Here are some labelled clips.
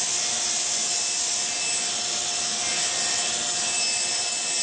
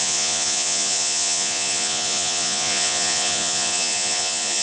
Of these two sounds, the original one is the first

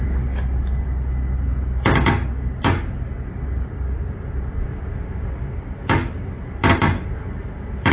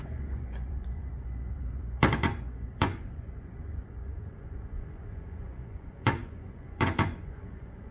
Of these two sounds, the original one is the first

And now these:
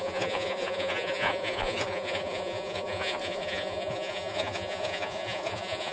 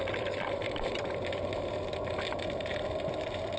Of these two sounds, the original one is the second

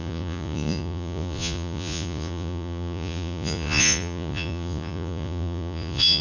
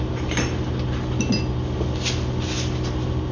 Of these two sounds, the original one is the second